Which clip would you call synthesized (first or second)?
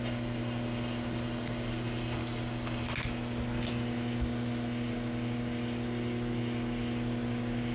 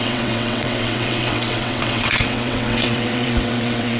second